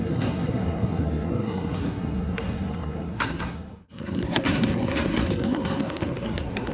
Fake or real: fake